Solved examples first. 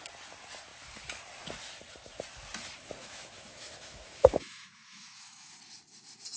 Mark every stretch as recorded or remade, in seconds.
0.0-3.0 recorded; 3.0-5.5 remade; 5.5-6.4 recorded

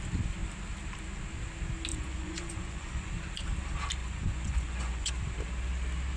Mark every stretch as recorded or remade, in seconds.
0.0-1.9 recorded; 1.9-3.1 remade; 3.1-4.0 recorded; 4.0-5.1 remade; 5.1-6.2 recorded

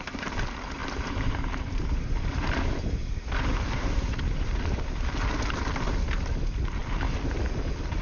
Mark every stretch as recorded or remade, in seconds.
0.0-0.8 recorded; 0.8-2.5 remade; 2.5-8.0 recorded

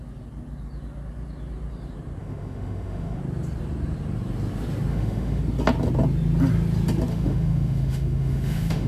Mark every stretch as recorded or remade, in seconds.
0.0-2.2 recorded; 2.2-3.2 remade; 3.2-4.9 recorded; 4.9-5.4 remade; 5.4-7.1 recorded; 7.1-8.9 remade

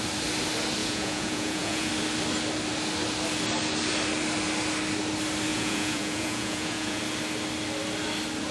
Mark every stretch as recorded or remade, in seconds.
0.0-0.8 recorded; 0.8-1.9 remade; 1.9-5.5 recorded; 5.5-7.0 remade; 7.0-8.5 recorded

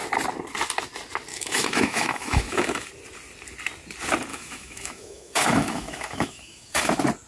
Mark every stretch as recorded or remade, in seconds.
0.0-1.3 recorded; 1.3-2.9 remade; 2.9-4.3 recorded; 4.3-6.8 remade; 6.8-7.3 recorded

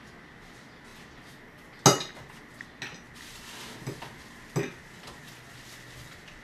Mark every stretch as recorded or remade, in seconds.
0.0-6.4 recorded